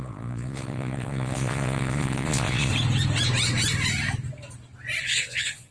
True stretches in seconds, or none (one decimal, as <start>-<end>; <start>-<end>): 2.7-5.0